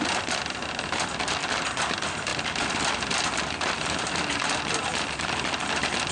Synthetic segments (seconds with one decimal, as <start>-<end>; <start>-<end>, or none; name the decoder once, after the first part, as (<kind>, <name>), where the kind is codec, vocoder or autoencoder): none